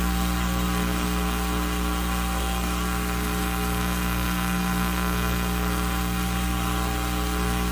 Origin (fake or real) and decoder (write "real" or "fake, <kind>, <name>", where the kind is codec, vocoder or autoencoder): fake, codec, SNAC